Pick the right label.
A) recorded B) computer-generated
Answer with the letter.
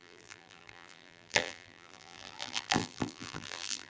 B